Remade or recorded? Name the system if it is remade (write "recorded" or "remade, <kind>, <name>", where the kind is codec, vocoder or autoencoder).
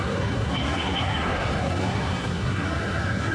remade, codec, SNAC